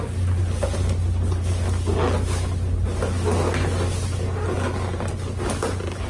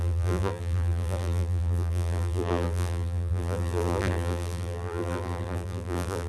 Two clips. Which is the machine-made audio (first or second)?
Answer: second